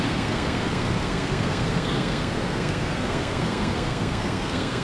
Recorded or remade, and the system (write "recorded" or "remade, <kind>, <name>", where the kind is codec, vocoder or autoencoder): remade, codec, SNAC